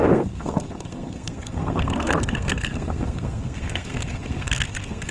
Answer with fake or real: fake